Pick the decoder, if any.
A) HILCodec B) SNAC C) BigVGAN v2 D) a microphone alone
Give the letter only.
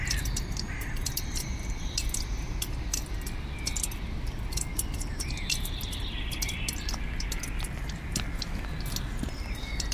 D